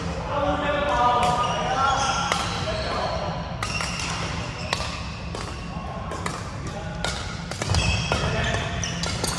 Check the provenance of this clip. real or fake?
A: real